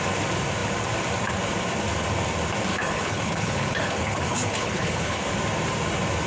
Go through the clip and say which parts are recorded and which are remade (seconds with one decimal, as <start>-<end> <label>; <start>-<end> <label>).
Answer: 0.0-2.7 recorded; 2.7-5.2 remade; 5.2-6.3 recorded